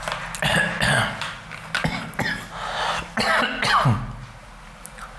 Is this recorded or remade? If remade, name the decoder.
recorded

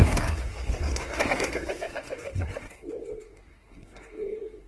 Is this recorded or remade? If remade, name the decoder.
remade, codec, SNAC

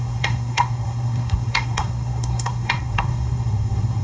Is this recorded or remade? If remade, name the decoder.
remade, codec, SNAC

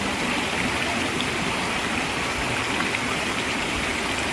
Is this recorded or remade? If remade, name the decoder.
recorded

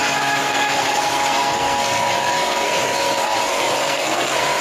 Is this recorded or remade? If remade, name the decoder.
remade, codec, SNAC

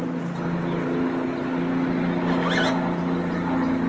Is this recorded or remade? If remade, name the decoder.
recorded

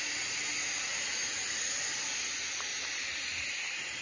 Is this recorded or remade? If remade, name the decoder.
recorded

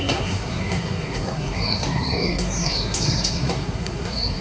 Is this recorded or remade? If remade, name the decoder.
remade, codec, SNAC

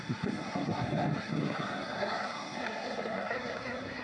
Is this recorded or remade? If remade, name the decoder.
remade, codec, SNAC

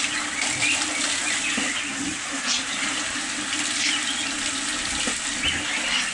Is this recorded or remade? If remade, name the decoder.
recorded